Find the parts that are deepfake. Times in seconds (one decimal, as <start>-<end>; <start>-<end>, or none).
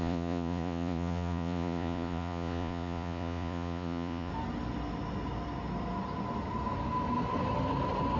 0.0-4.3